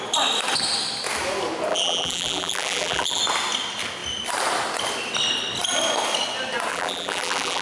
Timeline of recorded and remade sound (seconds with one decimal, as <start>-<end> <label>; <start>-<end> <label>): 0.0-1.7 recorded; 1.7-3.2 remade; 3.2-6.7 recorded; 6.7-7.6 remade